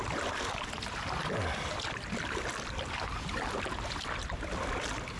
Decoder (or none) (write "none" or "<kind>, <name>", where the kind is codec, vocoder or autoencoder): none